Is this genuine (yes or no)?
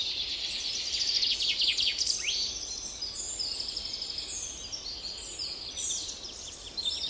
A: yes